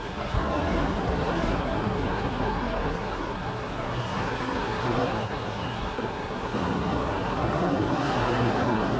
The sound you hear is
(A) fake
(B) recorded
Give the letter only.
A